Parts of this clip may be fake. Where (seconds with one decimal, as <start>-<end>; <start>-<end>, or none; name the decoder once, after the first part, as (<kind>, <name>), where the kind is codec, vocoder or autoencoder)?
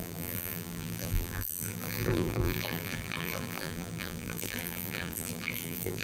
0.0-6.0 (vocoder, BigVGAN v2)